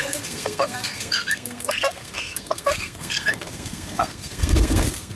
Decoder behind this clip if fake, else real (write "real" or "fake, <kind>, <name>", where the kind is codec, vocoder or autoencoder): fake, codec, SNAC